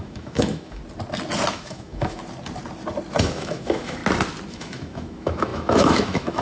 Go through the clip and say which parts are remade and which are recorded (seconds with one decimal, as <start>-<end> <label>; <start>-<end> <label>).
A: 0.0-0.8 remade; 0.8-1.5 recorded; 1.5-2.2 remade; 2.2-3.2 recorded; 3.2-4.0 remade; 4.0-4.5 recorded; 4.5-6.4 remade